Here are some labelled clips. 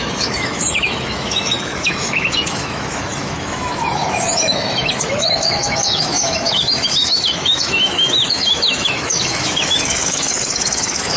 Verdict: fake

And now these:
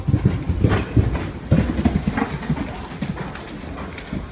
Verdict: real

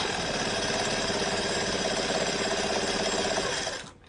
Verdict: real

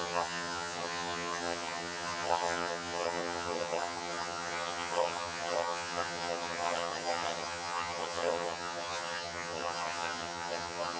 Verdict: fake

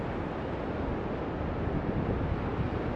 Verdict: real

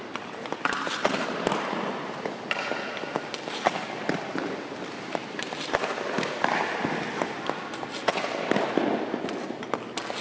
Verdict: real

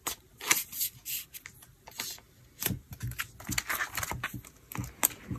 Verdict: real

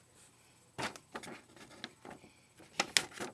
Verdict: real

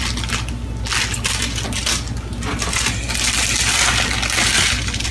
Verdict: real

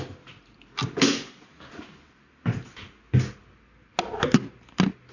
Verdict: real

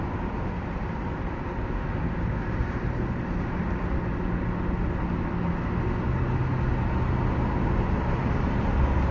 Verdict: real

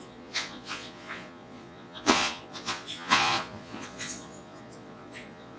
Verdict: fake